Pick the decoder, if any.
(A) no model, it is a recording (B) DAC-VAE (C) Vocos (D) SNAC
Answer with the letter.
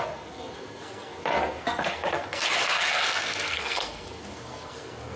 D